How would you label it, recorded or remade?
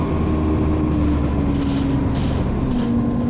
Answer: recorded